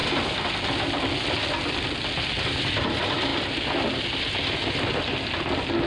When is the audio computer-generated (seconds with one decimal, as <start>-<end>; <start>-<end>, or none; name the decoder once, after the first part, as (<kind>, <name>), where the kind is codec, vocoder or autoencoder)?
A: none